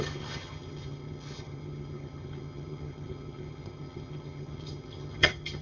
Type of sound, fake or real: fake